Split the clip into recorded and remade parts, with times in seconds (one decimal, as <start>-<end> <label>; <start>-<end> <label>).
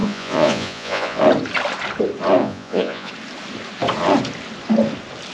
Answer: 0.0-1.2 remade; 1.2-2.4 recorded; 2.4-3.1 remade; 3.1-5.3 recorded